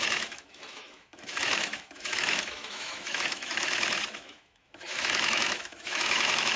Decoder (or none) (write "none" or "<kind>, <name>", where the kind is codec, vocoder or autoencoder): autoencoder, DAC-VAE